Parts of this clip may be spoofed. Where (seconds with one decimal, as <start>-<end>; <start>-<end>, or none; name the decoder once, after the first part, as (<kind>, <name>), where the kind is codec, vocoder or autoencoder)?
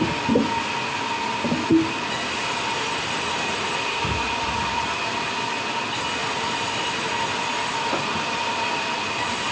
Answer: none